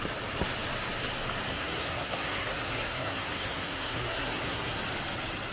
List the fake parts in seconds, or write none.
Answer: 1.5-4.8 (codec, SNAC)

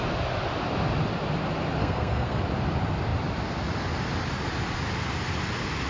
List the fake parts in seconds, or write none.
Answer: 1.8-2.4 (codec, SNAC)

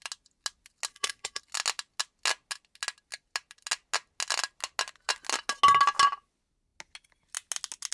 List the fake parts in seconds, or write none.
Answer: 0.9-1.4 (codec, SNAC)

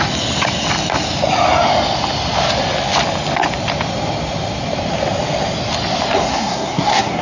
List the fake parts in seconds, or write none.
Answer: 6.3-7.2 (codec, SNAC)

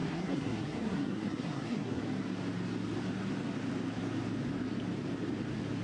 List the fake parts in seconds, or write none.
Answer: 0.0-2.0 (codec, SNAC)